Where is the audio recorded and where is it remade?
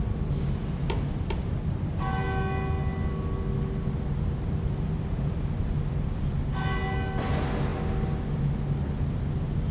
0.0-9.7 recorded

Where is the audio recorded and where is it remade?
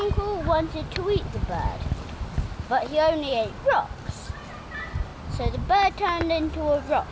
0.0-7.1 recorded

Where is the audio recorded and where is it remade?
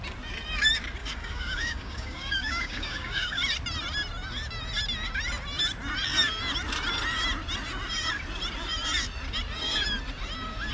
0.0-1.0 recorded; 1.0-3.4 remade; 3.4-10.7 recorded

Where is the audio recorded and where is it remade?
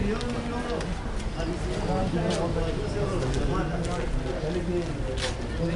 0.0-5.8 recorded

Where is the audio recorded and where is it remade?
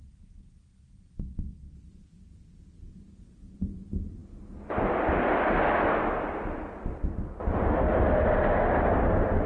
0.0-9.5 recorded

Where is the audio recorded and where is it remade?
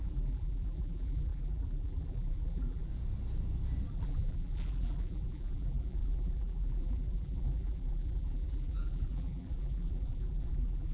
0.0-2.9 remade; 2.9-3.9 recorded; 3.9-10.9 remade